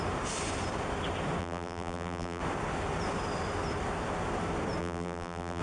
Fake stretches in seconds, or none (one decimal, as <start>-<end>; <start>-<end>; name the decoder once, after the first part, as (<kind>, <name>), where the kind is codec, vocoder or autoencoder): 1.4-2.4 (vocoder, BigVGAN v2); 4.8-5.6